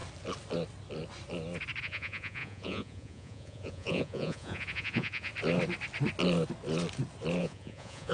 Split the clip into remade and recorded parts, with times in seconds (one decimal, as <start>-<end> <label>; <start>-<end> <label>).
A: 0.0-1.8 recorded; 1.8-5.3 remade; 5.3-7.4 recorded; 7.4-8.1 remade